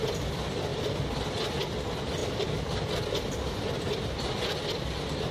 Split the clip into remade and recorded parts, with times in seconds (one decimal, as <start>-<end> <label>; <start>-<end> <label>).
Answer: 0.0-2.2 recorded; 2.2-2.9 remade; 2.9-5.3 recorded